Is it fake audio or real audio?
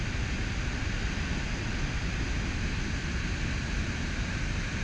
real